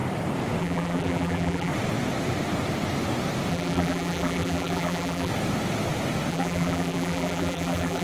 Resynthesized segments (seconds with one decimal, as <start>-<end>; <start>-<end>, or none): 0.6-1.7; 3.5-5.3; 6.3-8.0